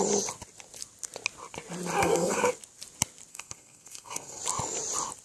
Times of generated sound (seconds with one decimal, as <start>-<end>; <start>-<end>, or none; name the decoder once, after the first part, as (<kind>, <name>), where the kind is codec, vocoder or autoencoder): 2.0-2.5 (codec, SNAC); 3.3-4.4